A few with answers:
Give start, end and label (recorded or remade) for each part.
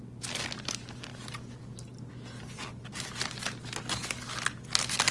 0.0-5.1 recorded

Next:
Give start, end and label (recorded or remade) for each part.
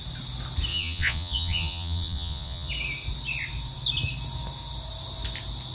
0.0-0.7 recorded; 0.7-2.7 remade; 2.7-5.7 recorded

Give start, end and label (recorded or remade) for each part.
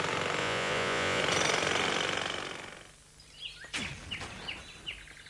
0.0-0.4 recorded; 0.4-1.2 remade; 1.2-5.3 recorded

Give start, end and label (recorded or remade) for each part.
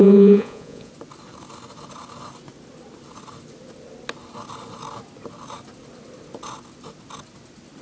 0.0-0.9 remade; 0.9-7.8 recorded